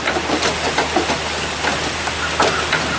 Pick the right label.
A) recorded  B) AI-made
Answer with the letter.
A